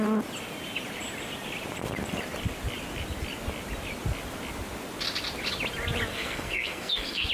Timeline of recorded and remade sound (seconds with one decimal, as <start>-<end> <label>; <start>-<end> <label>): 0.0-6.1 recorded; 6.1-7.3 remade